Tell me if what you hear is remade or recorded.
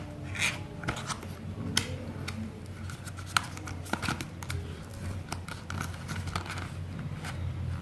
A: recorded